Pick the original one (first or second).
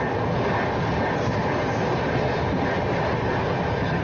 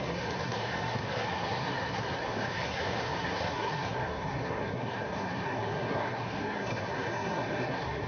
first